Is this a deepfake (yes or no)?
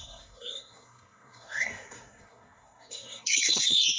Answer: yes